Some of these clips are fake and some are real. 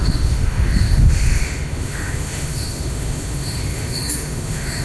fake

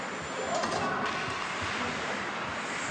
real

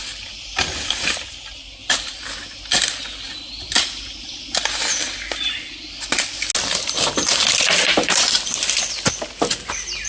real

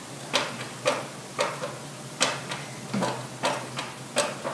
real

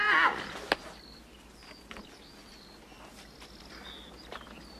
real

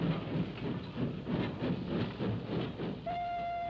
real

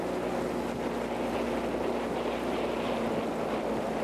real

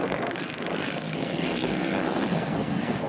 fake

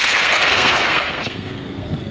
fake